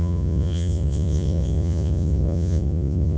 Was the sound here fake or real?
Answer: fake